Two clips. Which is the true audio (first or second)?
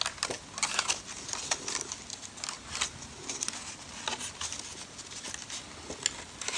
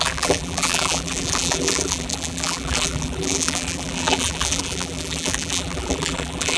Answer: first